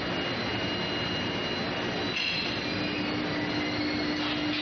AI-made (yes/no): no